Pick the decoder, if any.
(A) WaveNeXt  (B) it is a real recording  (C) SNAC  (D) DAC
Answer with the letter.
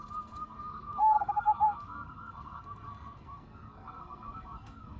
C